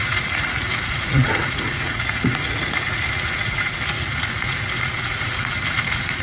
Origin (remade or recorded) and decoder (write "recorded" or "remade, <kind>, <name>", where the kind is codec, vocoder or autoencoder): remade, vocoder, Vocos